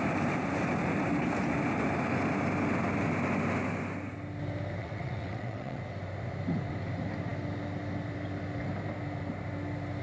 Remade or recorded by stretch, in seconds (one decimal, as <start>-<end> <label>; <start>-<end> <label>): 0.0-4.8 recorded; 4.8-5.8 remade; 5.8-10.0 recorded